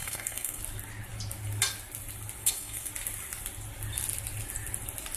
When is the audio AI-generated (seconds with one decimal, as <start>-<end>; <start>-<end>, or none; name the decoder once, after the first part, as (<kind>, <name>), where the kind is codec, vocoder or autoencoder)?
0.0-0.6 (codec, SNAC); 2.4-2.9